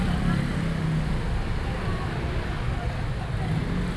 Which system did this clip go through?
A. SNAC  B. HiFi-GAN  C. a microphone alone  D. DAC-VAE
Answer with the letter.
C